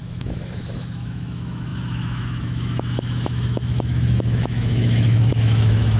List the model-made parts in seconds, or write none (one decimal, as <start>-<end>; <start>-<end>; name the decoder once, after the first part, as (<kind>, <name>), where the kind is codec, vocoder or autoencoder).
0.0-6.0 (autoencoder, DAC-VAE)